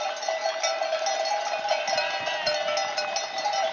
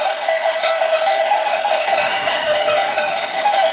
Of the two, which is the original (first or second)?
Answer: first